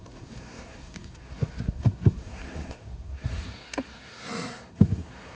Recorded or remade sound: remade